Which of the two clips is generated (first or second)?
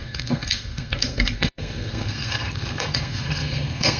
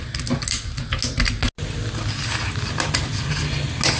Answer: first